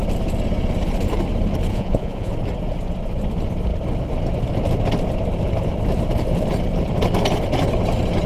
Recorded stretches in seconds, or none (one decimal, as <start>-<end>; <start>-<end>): 0.0-1.7; 2.3-8.3